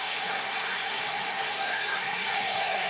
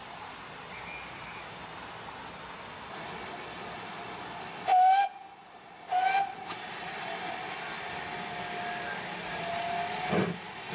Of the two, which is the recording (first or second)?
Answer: second